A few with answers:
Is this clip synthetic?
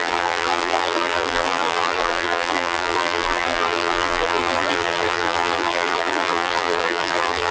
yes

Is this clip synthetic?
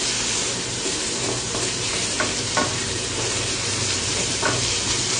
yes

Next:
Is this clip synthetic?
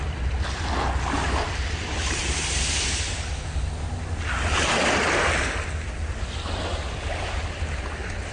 no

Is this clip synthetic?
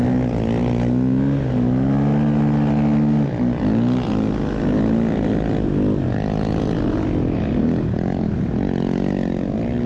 no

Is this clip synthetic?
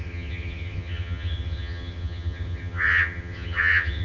yes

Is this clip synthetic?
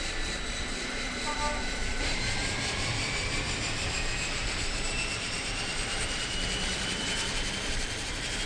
yes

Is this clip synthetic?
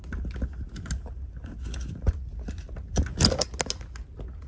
no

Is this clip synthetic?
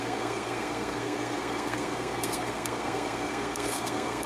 yes